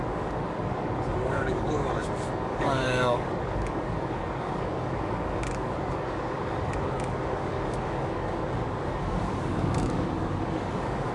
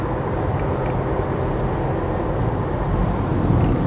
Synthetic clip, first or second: first